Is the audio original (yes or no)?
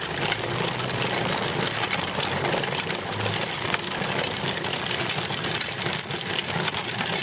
yes